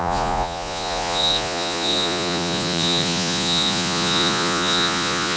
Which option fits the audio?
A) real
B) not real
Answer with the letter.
B